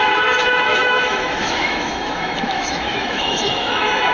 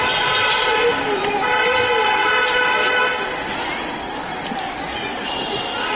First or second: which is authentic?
second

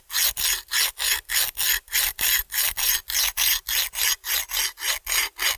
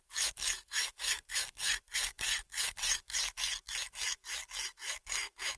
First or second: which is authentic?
first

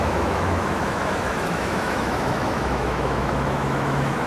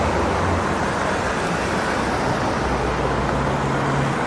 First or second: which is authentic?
second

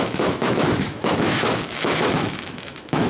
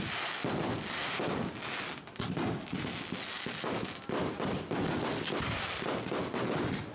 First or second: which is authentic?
second